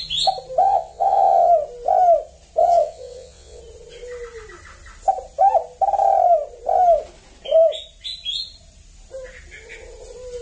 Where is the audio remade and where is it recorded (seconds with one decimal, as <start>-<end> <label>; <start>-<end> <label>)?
0.0-0.6 recorded; 0.6-1.5 remade; 1.5-2.6 recorded; 2.6-3.6 remade; 3.6-10.4 recorded